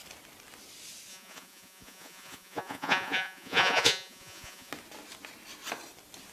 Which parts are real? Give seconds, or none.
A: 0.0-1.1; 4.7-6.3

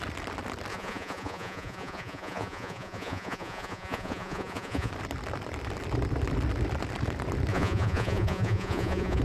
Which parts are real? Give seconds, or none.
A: 0.0-0.7; 4.9-7.5